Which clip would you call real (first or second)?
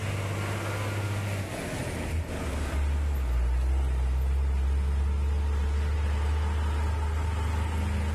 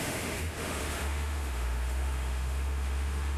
first